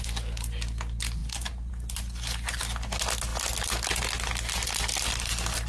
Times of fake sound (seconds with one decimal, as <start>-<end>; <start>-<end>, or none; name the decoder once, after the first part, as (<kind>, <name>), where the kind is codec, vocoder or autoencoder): none